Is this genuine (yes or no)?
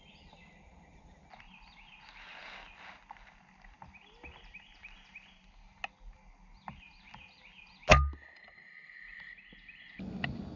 yes